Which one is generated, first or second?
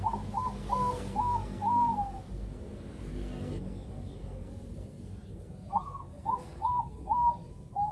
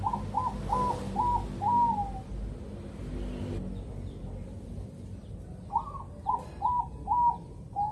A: first